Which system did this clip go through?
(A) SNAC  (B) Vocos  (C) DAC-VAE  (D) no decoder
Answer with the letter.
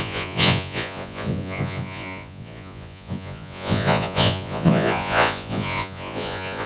B